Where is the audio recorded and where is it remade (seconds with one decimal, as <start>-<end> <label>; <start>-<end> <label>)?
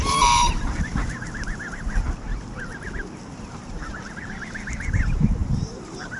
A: 0.0-0.9 remade; 0.9-3.5 recorded; 3.5-6.2 remade